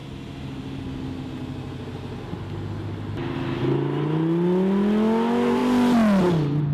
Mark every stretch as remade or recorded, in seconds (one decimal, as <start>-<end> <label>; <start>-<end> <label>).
0.0-6.7 recorded